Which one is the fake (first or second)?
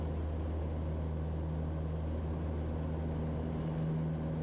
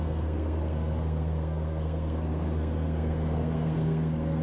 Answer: second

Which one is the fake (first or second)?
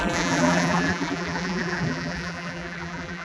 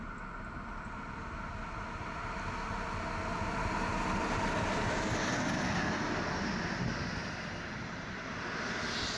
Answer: first